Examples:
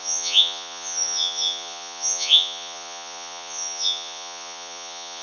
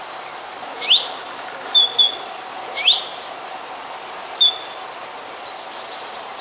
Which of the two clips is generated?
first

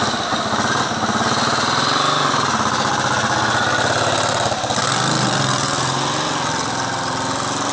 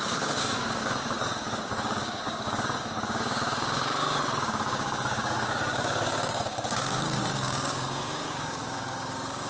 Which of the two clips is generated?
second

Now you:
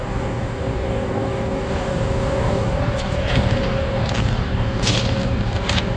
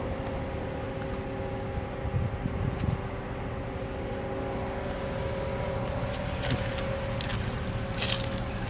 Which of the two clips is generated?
first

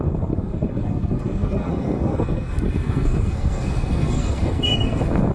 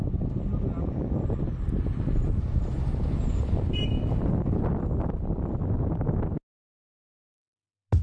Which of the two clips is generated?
first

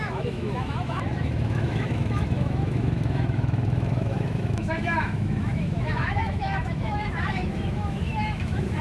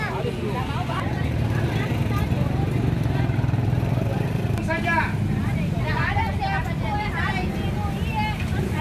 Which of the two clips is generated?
first